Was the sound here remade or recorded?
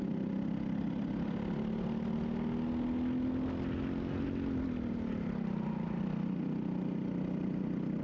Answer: recorded